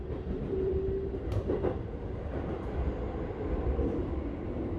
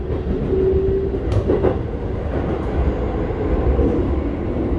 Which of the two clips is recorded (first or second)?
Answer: second